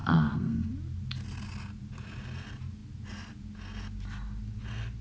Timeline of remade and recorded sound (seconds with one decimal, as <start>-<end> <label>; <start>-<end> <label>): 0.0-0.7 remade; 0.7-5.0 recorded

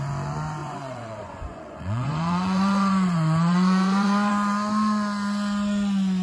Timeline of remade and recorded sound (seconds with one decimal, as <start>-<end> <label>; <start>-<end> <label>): 0.0-0.6 recorded; 0.6-4.3 remade; 4.3-6.2 recorded

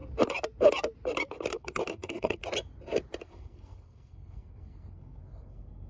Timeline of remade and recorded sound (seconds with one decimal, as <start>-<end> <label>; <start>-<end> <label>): 0.0-1.5 recorded; 1.5-2.4 remade; 2.4-3.2 recorded; 3.2-5.9 remade